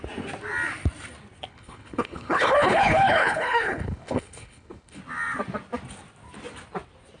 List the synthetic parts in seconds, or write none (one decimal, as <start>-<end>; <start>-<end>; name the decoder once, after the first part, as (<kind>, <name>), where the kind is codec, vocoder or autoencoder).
1.5-5.0 (codec, HILCodec)